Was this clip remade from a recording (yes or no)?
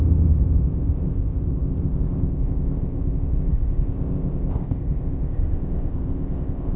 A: yes